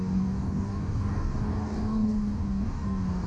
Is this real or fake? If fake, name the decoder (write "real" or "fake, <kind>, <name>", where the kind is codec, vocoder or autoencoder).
fake, codec, DAC